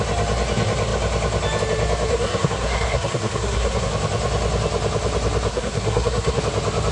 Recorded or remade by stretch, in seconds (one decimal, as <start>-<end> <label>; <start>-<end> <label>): 0.0-2.1 recorded; 2.1-3.9 remade; 3.9-5.5 recorded; 5.5-6.4 remade; 6.4-6.9 recorded